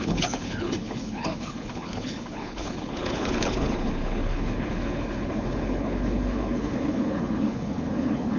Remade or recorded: remade